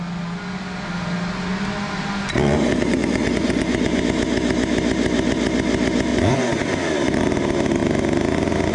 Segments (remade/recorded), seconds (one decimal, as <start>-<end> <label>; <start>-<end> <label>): 0.0-2.7 recorded; 2.7-4.0 remade; 4.0-6.1 recorded; 6.1-6.6 remade; 6.6-8.7 recorded